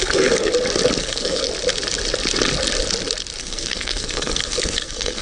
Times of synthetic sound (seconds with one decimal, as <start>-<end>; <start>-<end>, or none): 0.0-0.5; 1.0-1.5; 3.4-5.2